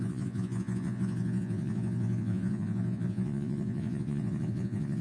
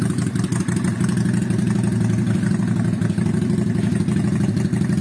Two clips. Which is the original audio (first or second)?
second